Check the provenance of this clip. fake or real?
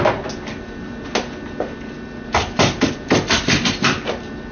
real